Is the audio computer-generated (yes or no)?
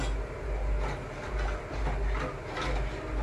no